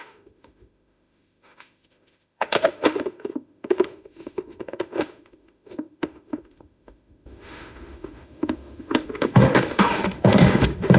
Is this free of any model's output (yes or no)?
no